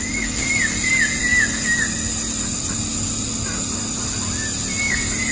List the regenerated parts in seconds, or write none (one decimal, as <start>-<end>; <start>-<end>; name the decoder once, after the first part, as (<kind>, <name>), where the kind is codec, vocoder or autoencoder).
none